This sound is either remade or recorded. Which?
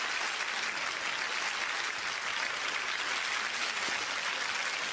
recorded